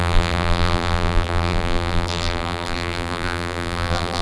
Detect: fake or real fake